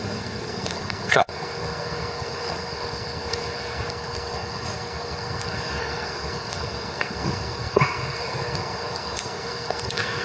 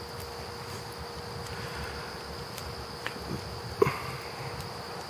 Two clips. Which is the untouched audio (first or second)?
second